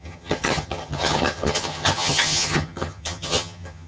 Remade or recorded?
remade